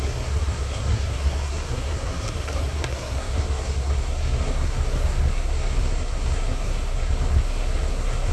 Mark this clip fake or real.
fake